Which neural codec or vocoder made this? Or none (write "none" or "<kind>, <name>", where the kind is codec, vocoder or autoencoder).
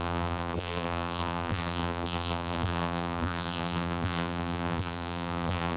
vocoder, BigVGAN v2